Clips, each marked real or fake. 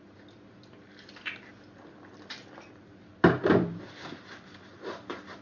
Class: real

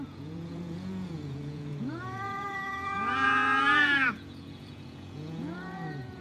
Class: fake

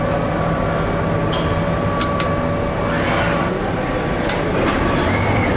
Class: real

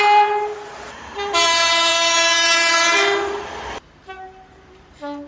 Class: fake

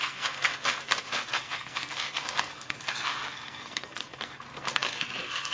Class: fake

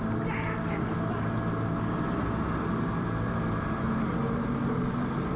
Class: real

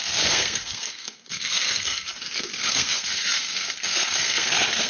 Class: fake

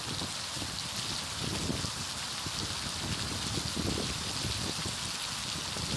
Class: real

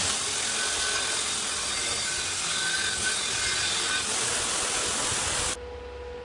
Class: real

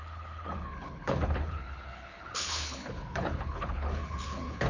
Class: fake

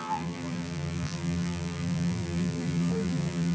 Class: fake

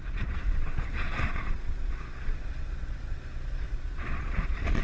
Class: fake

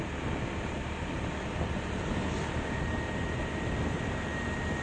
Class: real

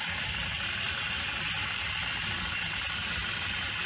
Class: real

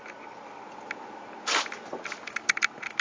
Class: real